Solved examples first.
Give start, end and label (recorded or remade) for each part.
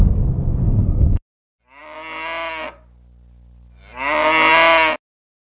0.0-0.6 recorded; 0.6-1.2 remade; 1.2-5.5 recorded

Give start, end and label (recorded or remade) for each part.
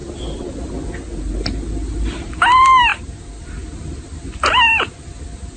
0.0-5.6 recorded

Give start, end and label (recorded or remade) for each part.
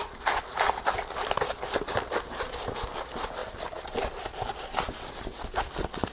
0.0-6.1 recorded